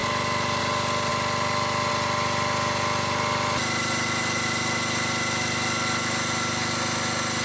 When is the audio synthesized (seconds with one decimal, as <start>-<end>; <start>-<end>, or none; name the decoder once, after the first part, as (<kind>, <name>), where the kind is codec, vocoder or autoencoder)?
none